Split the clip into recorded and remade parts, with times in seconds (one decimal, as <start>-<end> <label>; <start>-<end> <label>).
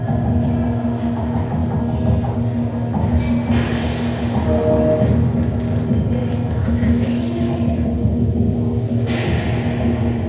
0.0-6.2 recorded; 6.2-7.2 remade; 7.2-10.3 recorded